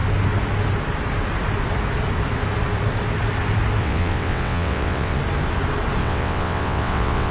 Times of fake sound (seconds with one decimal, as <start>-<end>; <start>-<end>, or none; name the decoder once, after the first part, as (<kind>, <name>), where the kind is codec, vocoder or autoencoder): 3.8-5.2 (vocoder, WaveNeXt); 6.0-7.3